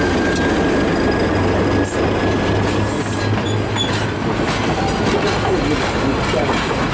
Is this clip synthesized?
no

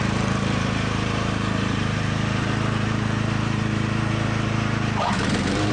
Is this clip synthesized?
yes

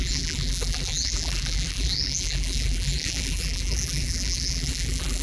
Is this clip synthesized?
yes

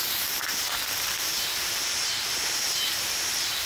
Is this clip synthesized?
yes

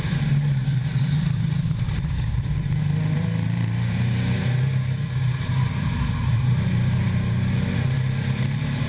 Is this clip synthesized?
yes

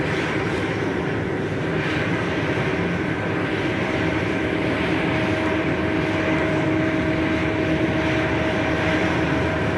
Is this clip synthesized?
yes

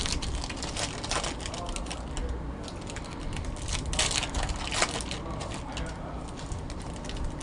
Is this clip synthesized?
no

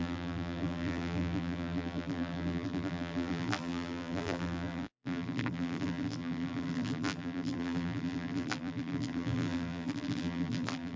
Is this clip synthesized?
yes